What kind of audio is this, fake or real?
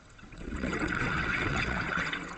fake